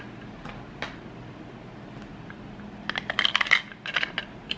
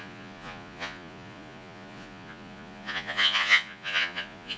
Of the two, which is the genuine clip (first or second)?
first